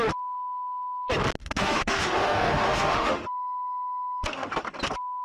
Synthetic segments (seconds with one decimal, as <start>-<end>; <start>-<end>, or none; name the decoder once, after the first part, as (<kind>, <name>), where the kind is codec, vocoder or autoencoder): 1.4-4.5 (autoencoder, DAC-VAE)

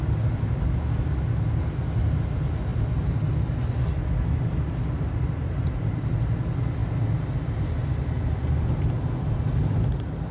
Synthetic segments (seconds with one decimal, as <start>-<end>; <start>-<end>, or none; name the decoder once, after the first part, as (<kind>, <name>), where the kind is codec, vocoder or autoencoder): none

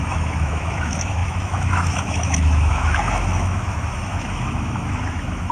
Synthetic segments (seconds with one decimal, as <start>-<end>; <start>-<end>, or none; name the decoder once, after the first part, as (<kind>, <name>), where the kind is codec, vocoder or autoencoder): 0.0-5.5 (autoencoder, DAC-VAE)

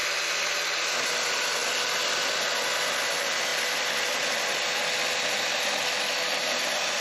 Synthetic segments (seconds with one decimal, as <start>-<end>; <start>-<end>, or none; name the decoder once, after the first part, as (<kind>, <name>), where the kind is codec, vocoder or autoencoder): none

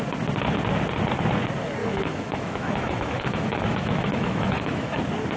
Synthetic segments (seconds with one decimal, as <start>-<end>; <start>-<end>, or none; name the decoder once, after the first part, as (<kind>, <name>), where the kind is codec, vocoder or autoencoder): 1.8-5.0 (autoencoder, DAC-VAE)

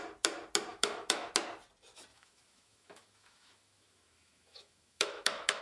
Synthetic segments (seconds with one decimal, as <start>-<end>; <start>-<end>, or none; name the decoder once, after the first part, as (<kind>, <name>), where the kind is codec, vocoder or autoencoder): 0.7-1.3 (autoencoder, DAC-VAE); 2.1-5.6

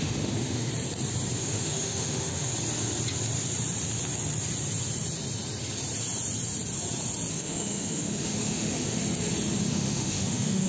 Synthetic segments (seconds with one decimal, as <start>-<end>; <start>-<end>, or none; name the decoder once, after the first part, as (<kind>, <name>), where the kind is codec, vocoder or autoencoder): 0.0-0.7 (autoencoder, DAC-VAE); 1.4-2.5; 7.3-9.0; 9.7-10.7

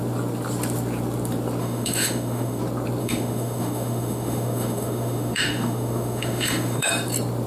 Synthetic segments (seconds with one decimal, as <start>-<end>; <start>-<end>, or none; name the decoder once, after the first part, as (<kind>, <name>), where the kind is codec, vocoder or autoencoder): 1.6-2.6 (autoencoder, DAC-VAE); 3.0-6.9